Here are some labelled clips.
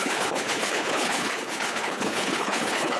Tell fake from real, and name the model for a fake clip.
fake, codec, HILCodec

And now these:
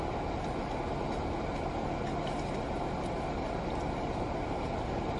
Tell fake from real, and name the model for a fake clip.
real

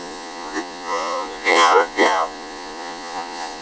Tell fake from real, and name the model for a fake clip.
fake, vocoder, Vocos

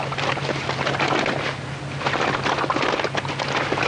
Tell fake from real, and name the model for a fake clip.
real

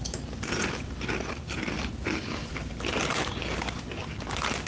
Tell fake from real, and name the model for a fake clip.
fake, vocoder, BigVGAN v2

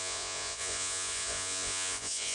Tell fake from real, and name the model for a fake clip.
fake, vocoder, Vocos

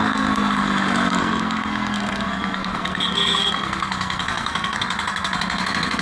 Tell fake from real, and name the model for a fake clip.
fake, codec, SNAC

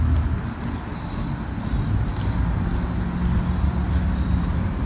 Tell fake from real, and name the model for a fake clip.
real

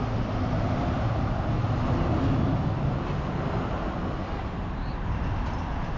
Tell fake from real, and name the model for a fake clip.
real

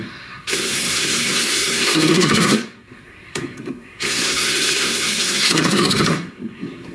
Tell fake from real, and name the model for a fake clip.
fake, codec, SNAC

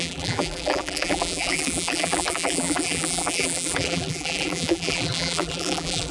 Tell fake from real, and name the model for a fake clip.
fake, vocoder, BigVGAN v2